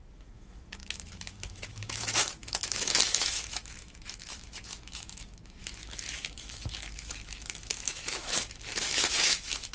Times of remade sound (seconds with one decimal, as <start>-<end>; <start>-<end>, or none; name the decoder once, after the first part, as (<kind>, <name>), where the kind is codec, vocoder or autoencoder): 0.0-9.7 (autoencoder, DAC-VAE)